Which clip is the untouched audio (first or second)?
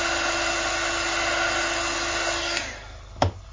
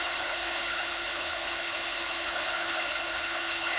first